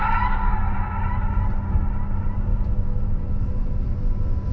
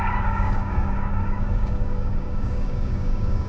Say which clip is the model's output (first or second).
second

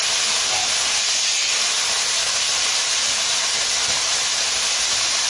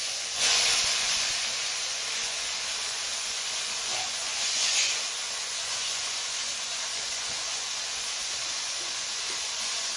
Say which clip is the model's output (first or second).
second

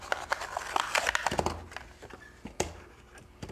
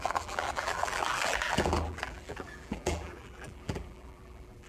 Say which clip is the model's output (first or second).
second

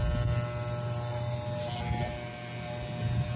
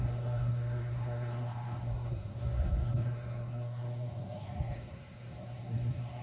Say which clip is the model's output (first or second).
second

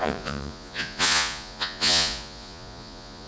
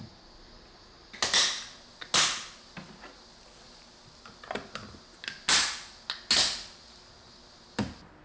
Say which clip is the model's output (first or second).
first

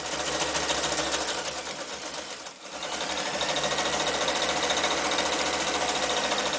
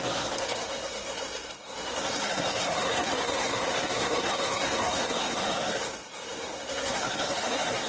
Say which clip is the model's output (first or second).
second